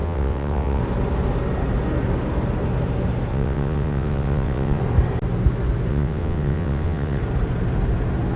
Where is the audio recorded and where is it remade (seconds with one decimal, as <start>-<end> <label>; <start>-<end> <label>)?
0.0-0.8 remade; 0.8-3.3 recorded; 3.3-4.8 remade; 4.8-5.9 recorded; 5.9-7.2 remade; 7.2-8.4 recorded